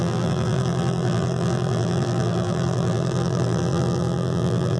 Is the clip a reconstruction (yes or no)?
yes